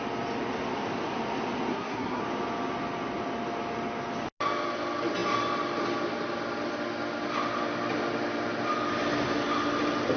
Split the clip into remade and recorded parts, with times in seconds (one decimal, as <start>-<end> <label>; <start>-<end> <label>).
0.0-1.7 recorded; 1.7-2.2 remade; 2.2-10.2 recorded